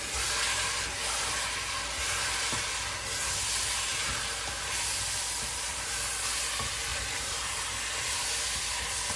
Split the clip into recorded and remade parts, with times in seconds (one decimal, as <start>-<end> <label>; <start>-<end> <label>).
0.0-6.9 recorded; 6.9-7.6 remade; 7.6-9.2 recorded